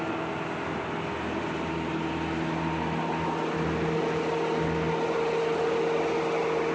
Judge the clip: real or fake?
real